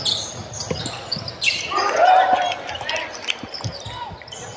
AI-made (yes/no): no